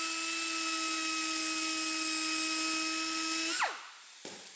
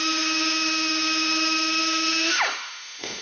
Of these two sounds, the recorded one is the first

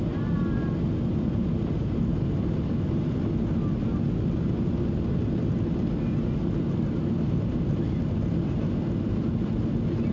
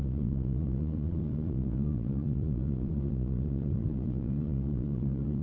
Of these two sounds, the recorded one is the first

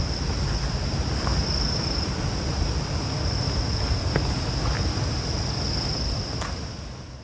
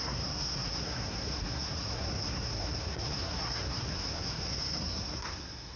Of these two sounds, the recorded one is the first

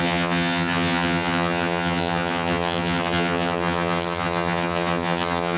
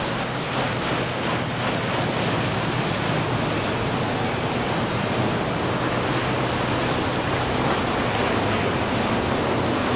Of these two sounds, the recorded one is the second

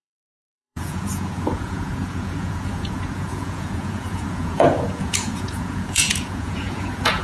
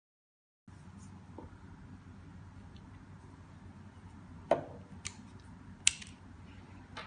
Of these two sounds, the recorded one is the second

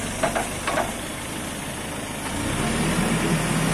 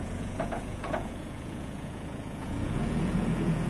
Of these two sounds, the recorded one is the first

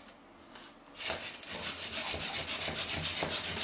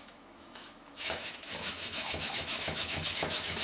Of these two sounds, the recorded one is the first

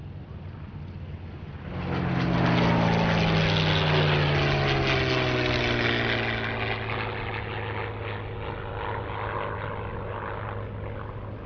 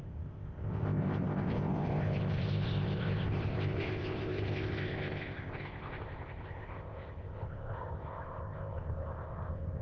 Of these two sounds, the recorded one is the first